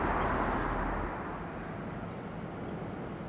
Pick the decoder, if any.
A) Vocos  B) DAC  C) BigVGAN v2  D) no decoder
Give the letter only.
D